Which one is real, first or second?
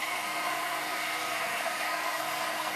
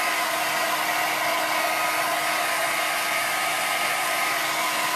second